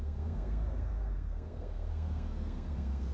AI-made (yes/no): yes